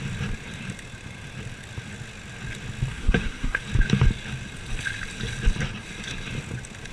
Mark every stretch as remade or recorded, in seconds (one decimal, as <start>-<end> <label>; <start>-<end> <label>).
0.0-2.9 recorded; 2.9-3.6 remade; 3.6-6.9 recorded